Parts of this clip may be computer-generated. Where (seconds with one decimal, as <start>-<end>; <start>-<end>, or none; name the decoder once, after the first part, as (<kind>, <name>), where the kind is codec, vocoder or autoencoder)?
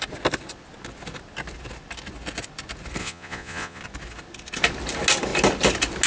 3.0-3.8 (vocoder, Vocos)